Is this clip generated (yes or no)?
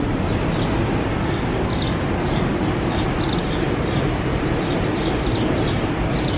no